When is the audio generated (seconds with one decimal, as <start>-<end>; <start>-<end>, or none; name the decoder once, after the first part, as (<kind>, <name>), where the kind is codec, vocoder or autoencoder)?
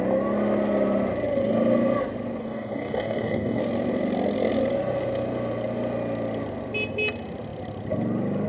2.4-3.6 (codec, DAC)